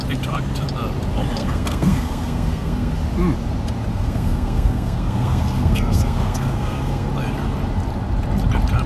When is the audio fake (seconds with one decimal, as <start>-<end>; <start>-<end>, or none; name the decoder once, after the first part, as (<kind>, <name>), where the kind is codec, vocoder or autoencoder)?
1.4-2.9 (codec, SNAC); 3.9-7.1